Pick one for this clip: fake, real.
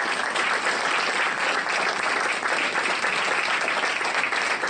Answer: real